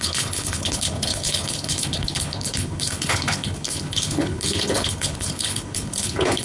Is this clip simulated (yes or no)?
yes